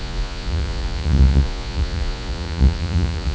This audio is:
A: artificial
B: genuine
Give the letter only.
A